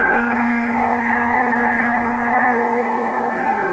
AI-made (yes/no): yes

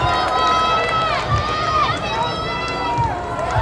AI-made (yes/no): no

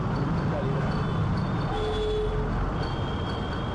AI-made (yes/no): no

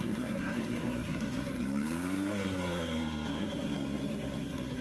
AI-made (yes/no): yes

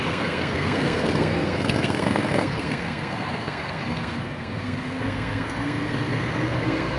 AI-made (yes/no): yes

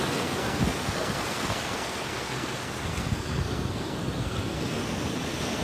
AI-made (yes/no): yes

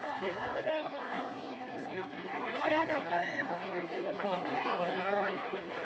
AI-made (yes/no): yes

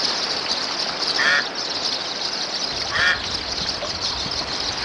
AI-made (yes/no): no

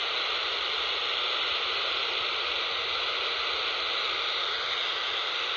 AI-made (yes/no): no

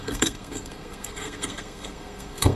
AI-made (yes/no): yes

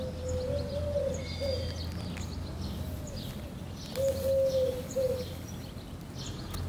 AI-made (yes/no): no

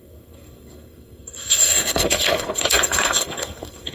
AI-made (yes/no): yes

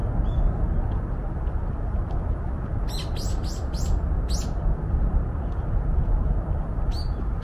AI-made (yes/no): no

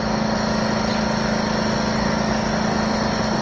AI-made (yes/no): no